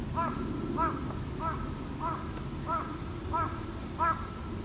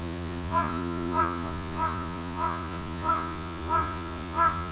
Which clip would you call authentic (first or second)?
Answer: first